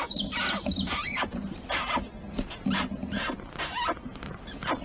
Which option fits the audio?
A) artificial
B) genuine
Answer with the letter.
B